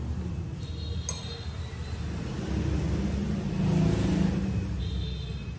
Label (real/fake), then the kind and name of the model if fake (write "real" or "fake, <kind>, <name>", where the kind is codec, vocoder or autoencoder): real